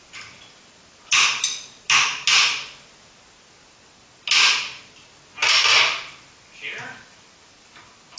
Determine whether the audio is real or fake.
real